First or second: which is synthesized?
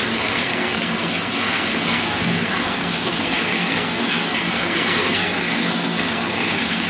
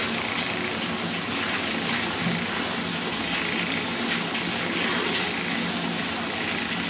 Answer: first